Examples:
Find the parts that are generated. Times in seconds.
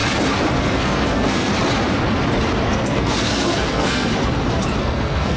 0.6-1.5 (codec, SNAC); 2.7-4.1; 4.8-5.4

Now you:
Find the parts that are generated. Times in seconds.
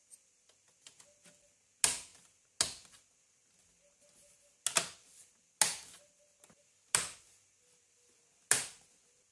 none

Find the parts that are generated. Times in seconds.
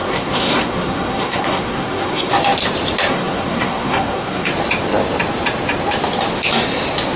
0.0-2.3 (codec, SNAC); 3.1-4.5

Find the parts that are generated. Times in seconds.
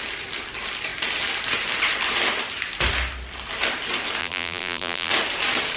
4.2-5.1 (vocoder, BigVGAN v2)